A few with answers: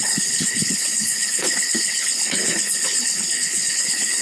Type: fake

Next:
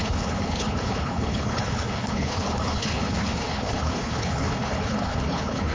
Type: fake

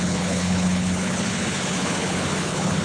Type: fake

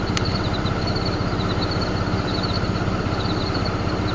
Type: real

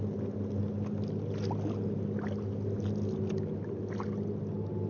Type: real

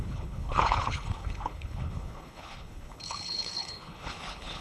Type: fake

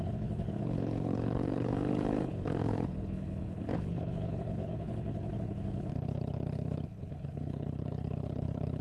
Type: fake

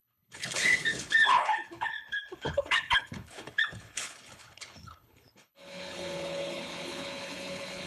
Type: fake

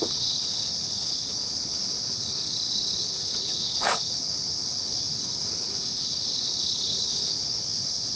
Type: fake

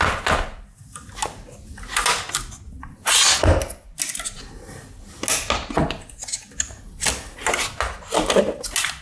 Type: real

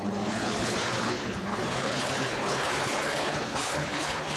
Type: fake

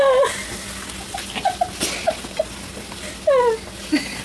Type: real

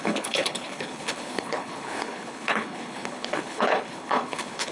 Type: fake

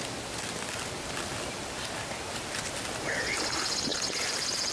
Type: real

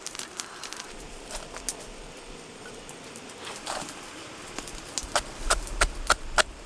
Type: real